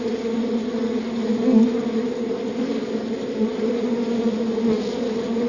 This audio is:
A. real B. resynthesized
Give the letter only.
A